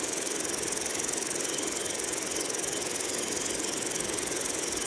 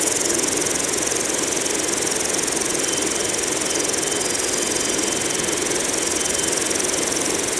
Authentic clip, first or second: second